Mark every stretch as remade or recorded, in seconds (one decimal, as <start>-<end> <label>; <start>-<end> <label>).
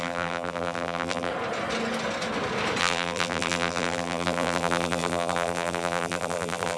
0.0-1.3 remade; 1.3-2.8 recorded; 2.8-6.8 remade